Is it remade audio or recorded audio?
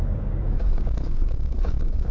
remade